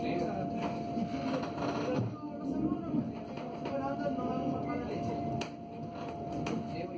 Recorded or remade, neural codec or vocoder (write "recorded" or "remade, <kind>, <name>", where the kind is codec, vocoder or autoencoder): recorded